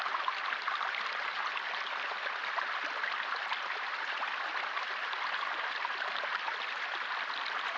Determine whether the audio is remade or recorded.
remade